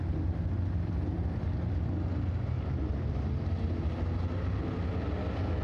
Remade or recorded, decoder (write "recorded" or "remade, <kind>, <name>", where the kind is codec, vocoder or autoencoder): recorded